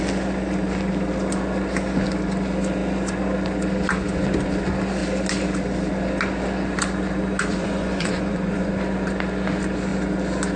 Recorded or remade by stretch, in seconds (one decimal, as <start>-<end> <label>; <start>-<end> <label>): 0.0-7.5 recorded; 7.5-8.7 remade; 8.7-10.6 recorded